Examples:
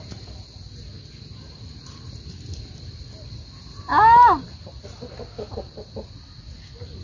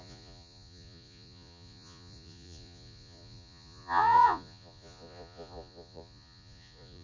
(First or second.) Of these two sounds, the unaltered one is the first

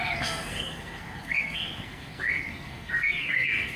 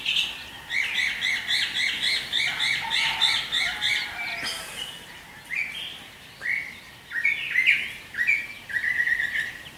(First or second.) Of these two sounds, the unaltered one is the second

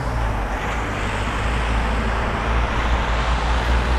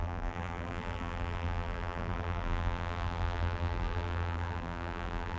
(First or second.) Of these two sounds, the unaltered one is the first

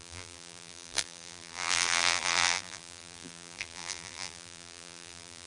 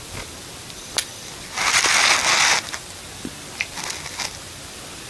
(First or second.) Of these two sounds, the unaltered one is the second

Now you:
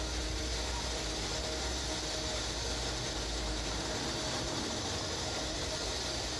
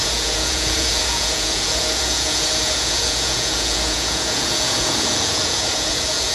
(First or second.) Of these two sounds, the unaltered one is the first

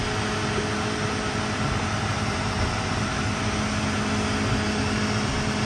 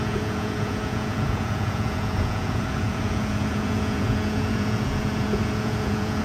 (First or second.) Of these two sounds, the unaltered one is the first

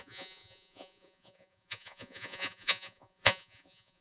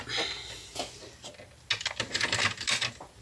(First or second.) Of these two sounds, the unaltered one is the second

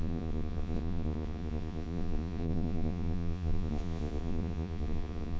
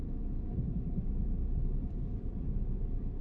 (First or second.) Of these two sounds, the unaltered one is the second